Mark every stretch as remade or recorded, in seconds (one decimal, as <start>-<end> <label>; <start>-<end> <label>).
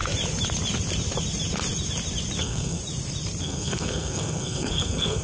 0.0-2.4 recorded; 2.4-2.8 remade; 2.8-3.4 recorded; 3.4-5.2 remade